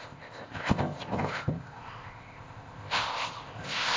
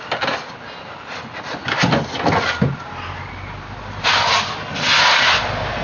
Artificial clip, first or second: first